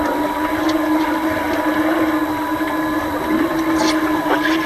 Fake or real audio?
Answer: real